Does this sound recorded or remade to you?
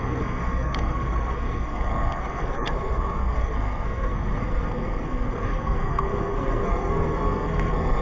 remade